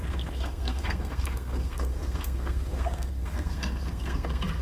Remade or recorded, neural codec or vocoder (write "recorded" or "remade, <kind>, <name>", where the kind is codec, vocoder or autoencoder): remade, codec, SNAC